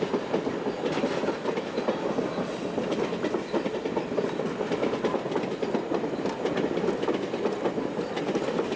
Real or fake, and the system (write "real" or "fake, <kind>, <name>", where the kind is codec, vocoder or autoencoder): real